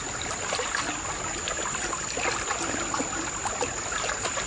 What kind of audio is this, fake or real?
real